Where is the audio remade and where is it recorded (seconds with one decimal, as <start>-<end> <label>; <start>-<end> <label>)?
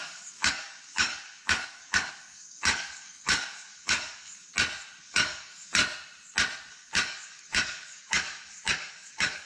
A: 0.0-4.5 remade; 4.5-5.0 recorded; 5.0-5.8 remade; 5.8-6.7 recorded; 6.7-9.5 remade